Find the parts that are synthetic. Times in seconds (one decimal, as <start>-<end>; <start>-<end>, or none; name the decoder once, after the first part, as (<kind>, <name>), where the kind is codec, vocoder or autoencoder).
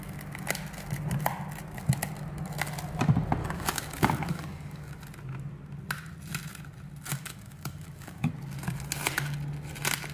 3.4-4.9 (codec, DAC); 7.1-8.3